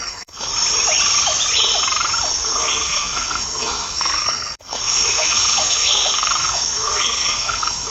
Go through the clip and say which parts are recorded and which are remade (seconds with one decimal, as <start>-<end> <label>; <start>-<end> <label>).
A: 0.0-0.5 remade; 0.5-2.3 recorded; 2.3-7.9 remade